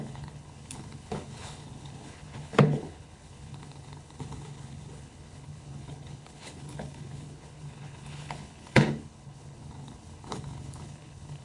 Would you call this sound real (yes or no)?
no